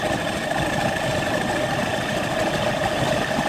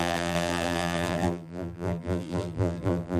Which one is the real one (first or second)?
first